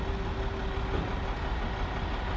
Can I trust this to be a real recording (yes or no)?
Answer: yes